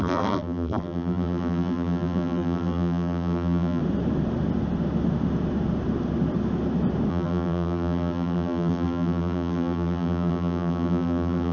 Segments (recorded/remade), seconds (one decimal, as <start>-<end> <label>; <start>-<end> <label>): 0.0-3.8 remade; 3.8-7.1 recorded; 7.1-11.5 remade